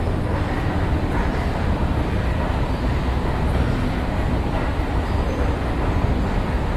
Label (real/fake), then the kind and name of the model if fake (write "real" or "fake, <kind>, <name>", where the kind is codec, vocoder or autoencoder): real